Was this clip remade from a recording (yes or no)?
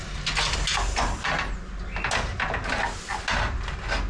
no